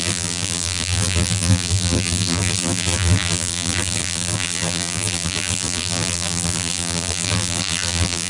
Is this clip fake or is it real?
fake